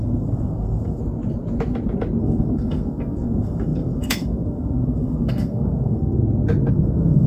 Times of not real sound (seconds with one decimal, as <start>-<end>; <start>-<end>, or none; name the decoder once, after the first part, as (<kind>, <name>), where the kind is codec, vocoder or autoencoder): 0.0-1.0 (codec, SNAC); 2.2-6.2; 6.7-7.3